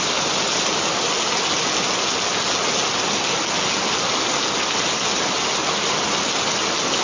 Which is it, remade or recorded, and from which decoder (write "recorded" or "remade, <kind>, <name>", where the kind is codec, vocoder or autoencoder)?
recorded